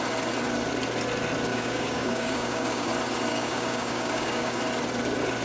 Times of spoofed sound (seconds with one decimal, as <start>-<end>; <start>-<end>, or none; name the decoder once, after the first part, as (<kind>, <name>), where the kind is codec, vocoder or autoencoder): 1.5-2.9 (codec, DAC); 3.3-4.6